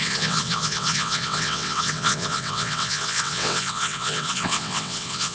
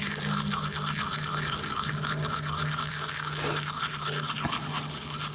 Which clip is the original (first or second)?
second